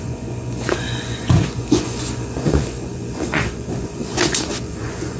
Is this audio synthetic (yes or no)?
yes